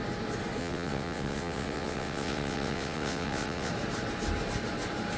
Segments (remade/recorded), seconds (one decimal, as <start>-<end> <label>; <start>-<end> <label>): 0.0-0.6 recorded; 0.6-3.7 remade; 3.7-5.2 recorded